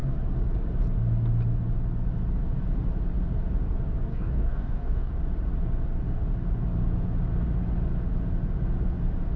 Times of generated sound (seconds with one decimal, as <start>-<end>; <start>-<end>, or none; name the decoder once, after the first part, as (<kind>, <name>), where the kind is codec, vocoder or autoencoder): 4.1-5.1 (codec, DAC)